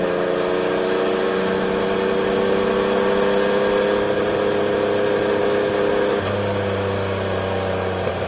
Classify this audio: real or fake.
real